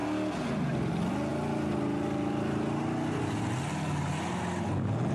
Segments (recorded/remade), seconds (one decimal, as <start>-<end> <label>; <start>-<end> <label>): 0.0-5.1 recorded